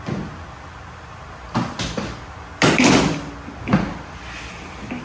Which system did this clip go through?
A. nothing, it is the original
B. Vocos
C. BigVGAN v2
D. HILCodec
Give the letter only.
A